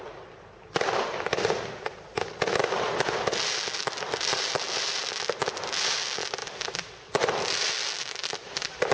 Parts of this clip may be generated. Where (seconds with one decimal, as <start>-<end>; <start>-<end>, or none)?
6.4-7.7; 8.2-8.9